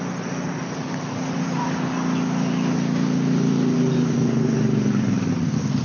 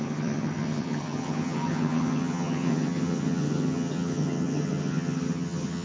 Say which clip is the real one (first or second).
first